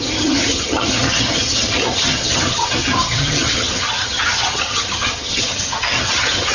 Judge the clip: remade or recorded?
remade